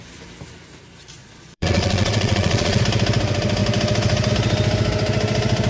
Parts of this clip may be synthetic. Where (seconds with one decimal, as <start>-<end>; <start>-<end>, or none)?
1.2-2.8